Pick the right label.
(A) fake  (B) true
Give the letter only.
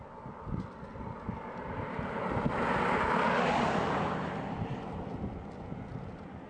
B